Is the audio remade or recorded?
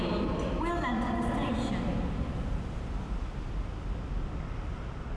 recorded